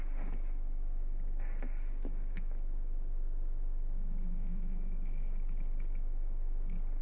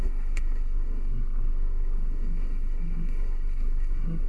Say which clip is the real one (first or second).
first